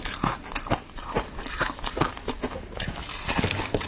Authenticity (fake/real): real